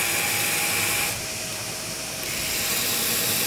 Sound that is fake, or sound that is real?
real